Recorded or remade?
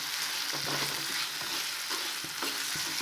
recorded